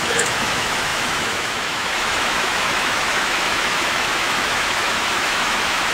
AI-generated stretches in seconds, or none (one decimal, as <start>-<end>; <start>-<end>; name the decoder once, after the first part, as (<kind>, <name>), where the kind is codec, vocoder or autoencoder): 0.0-5.9 (autoencoder, DAC-VAE)